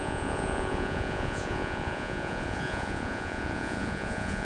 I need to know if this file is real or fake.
fake